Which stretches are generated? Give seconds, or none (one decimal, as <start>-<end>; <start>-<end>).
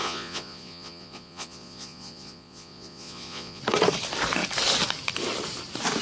0.0-3.6